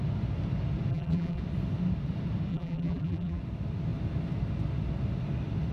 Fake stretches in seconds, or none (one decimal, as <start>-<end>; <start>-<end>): 0.9-1.4; 2.5-3.4